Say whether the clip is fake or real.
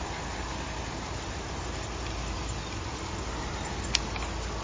real